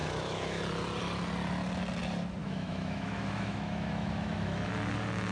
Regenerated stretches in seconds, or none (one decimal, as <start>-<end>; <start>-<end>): 0.0-0.6; 2.4-4.7